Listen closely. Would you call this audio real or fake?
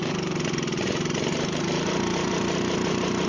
fake